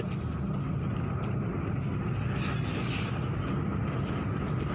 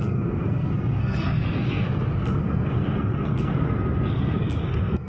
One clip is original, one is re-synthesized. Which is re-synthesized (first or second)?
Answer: second